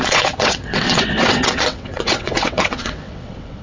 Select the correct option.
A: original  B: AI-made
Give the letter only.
B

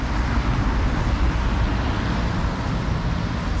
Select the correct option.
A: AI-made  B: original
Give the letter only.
B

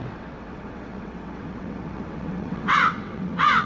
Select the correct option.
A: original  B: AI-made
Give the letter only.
B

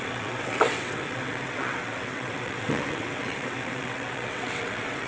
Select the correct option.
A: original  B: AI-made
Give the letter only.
B